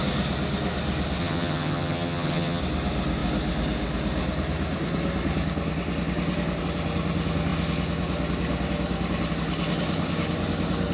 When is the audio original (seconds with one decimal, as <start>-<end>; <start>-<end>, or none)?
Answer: 0.0-1.2; 2.6-10.9